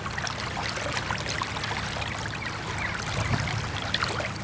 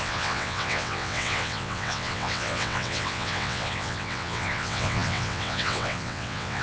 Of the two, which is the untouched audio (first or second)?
first